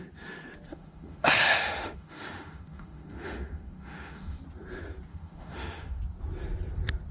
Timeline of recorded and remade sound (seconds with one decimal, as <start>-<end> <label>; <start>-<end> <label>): 0.0-0.7 recorded; 0.7-4.4 remade; 4.4-5.1 recorded; 5.1-6.0 remade; 6.0-7.1 recorded